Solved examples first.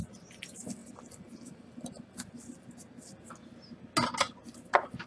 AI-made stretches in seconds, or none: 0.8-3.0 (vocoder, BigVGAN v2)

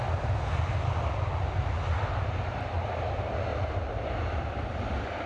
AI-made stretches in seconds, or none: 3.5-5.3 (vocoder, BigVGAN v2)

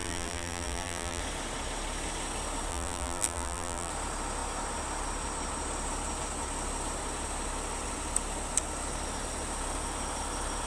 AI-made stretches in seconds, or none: 0.0-1.2 (vocoder, BigVGAN v2); 2.7-3.9

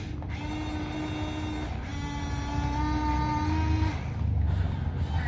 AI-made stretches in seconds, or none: none

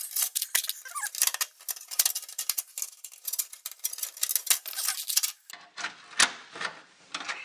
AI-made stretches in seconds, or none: none

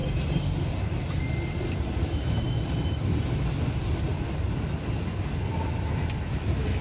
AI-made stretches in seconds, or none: 0.0-2.5 (vocoder, BigVGAN v2); 4.1-4.8

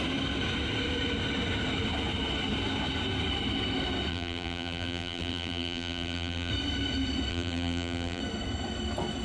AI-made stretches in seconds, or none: 4.1-6.5 (vocoder, BigVGAN v2); 7.3-8.2

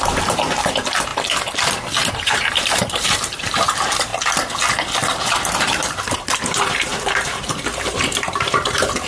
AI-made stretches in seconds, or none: 0.0-1.1 (vocoder, BigVGAN v2); 2.1-4.1; 5.5-9.1